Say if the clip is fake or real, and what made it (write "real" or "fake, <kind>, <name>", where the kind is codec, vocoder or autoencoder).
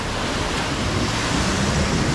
real